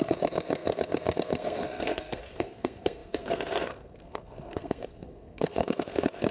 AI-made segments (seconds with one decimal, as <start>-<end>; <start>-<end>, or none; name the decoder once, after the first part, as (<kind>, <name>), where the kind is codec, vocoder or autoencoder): 0.0-6.3 (codec, SNAC)